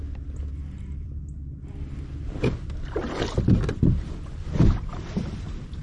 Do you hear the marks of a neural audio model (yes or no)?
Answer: no